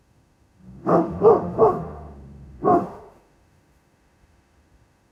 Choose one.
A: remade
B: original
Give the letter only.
A